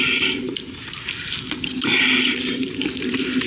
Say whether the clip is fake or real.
real